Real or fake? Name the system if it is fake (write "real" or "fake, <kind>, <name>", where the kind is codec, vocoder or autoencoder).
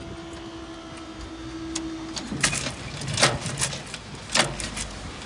real